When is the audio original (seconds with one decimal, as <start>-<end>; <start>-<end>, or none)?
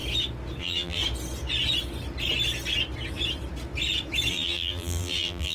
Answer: 0.0-0.6; 1.0-4.3